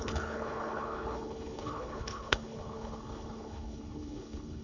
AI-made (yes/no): yes